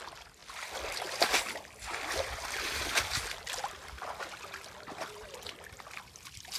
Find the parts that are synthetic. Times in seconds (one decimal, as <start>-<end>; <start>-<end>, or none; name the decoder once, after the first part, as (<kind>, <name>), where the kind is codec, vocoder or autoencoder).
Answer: none